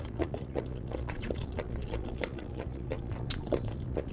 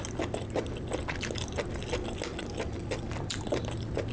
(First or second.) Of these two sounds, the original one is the second